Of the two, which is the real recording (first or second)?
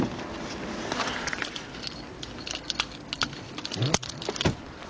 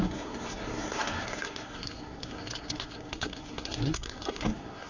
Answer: first